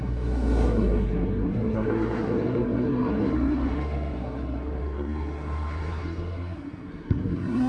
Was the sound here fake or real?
fake